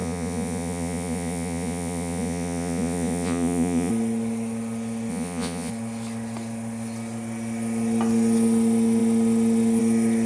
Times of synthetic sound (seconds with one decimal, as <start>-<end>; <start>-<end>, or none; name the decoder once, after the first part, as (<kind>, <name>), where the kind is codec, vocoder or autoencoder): 0.0-3.9 (vocoder, Vocos); 5.1-5.7